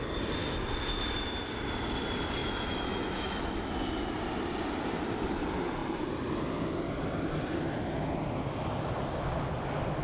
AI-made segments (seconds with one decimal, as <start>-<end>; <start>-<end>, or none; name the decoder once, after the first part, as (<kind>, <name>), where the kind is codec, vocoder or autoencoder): 2.4-3.7 (autoencoder, DAC-VAE)